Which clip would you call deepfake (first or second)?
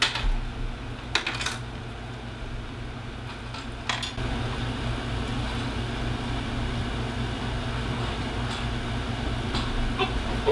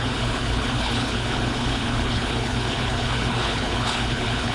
second